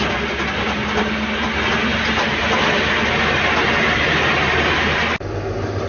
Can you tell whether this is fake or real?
real